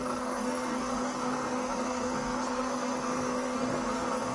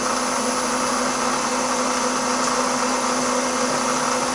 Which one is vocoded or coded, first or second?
first